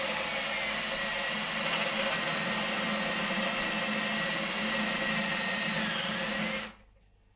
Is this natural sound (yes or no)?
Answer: yes